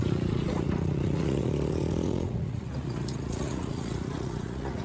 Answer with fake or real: fake